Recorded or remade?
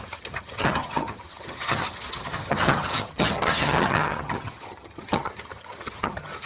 remade